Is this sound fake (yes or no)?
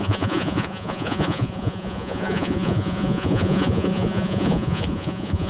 yes